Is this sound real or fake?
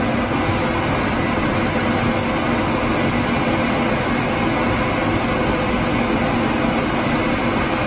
real